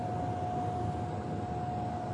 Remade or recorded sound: recorded